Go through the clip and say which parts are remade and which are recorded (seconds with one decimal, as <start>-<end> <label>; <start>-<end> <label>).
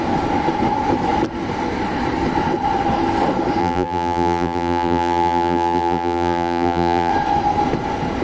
0.0-3.6 recorded; 3.6-7.1 remade; 7.1-8.2 recorded